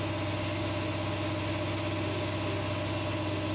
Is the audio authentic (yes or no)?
yes